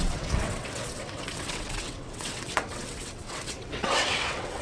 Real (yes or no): no